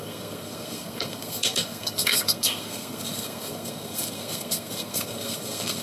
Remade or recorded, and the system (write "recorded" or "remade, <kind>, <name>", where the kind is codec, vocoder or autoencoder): remade, codec, SNAC